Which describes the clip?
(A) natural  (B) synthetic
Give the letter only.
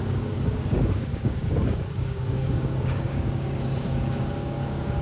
B